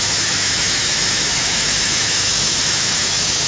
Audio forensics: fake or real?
fake